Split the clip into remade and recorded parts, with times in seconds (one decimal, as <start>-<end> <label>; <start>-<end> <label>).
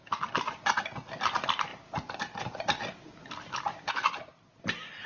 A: 0.0-5.1 recorded